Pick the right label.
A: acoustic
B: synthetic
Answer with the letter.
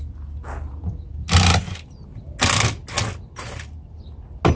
A